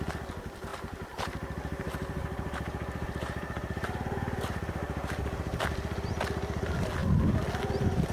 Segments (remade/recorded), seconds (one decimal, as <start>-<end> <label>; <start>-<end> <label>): 0.0-0.7 recorded; 0.7-5.6 remade; 5.6-8.1 recorded

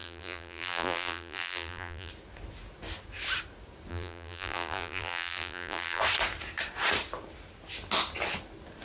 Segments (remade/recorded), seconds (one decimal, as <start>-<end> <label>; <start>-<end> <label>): 0.0-2.1 remade; 2.1-3.9 recorded; 3.9-6.0 remade; 6.0-8.8 recorded